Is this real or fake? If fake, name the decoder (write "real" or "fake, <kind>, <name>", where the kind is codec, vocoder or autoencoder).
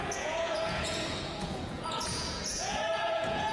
fake, vocoder, Vocos